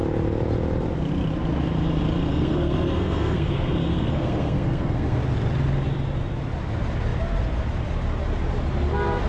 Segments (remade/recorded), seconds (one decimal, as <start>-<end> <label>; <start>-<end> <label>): 0.0-2.3 recorded; 2.3-5.2 remade; 5.2-9.3 recorded